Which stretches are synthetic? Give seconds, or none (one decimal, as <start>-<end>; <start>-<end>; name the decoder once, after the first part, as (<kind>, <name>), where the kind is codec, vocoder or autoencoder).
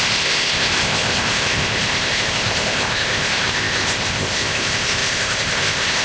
0.0-6.0 (codec, ZipCodec)